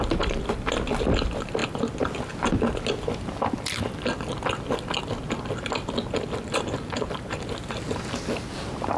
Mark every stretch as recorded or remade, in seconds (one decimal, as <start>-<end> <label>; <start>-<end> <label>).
0.0-9.0 recorded